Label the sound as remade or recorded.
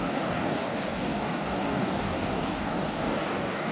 remade